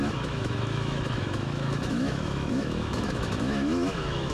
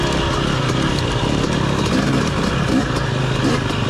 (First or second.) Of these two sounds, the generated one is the first